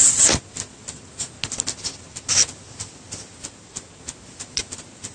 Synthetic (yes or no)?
no